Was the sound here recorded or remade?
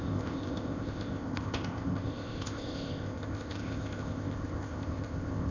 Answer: remade